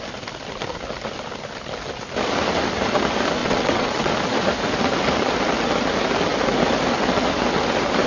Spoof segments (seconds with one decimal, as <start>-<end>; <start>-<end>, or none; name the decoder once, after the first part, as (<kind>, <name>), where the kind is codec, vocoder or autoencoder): 3.4-4.1 (vocoder, WaveNeXt)